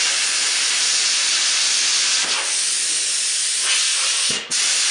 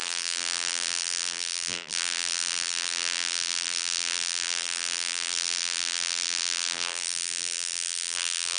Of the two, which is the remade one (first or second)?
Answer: second